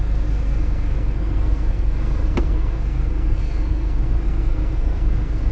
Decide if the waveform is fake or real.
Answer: fake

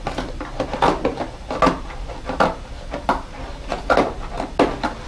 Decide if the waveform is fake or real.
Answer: real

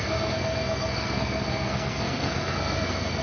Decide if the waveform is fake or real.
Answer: fake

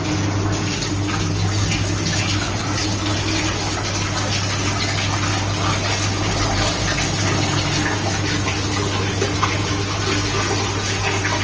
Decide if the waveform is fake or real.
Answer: real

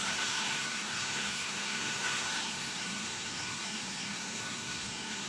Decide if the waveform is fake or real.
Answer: fake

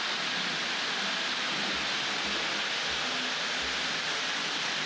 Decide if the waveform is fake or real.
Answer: real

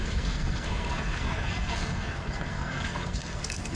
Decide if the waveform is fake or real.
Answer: fake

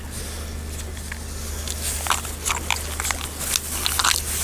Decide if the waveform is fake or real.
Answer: real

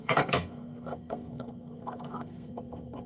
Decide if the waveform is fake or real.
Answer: fake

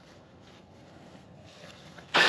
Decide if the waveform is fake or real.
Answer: fake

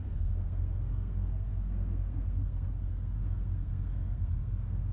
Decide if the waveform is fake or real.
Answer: fake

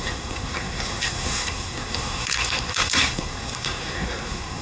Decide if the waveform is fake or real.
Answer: fake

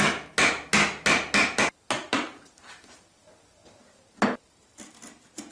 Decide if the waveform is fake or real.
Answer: real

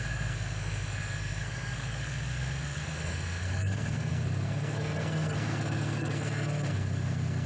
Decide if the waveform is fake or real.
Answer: fake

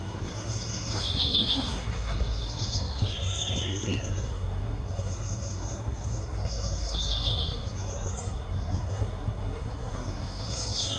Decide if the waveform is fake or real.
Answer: fake